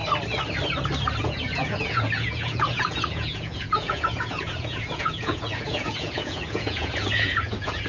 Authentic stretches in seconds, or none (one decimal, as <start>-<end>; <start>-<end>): 0.0-1.2